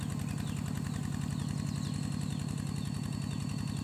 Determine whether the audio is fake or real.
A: real